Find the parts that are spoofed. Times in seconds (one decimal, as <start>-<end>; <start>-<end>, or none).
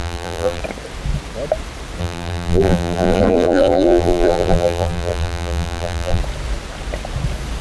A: 0.0-0.6; 2.0-6.2